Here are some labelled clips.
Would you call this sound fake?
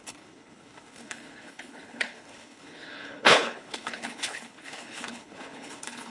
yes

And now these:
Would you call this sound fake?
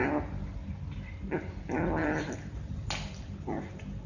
no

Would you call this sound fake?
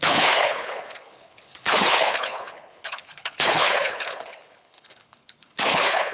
yes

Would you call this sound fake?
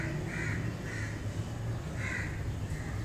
no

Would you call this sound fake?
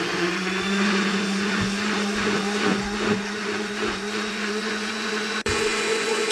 yes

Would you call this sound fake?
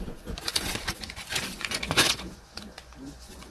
yes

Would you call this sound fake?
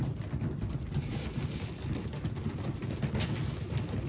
no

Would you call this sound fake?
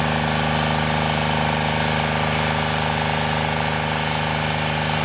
no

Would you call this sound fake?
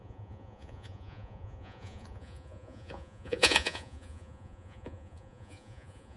yes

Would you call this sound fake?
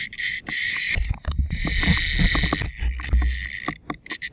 no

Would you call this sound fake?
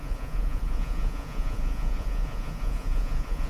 yes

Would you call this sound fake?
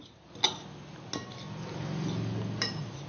no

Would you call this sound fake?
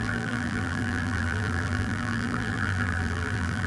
yes